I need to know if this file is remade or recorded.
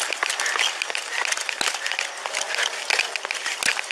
recorded